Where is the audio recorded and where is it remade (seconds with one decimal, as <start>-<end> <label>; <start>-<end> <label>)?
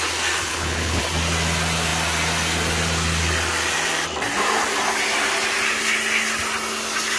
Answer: 0.0-0.5 recorded; 0.5-1.0 remade; 1.0-7.2 recorded